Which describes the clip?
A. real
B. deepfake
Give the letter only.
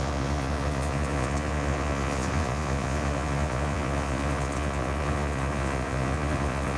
B